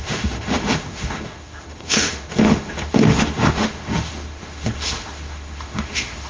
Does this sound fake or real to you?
fake